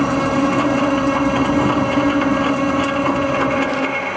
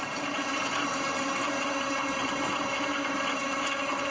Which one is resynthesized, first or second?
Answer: second